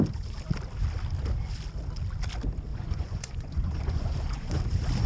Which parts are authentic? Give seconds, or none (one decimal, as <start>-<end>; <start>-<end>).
0.0-2.7; 4.6-5.1